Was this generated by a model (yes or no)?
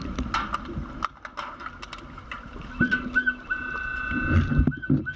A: no